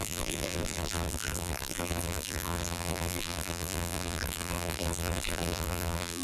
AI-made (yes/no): yes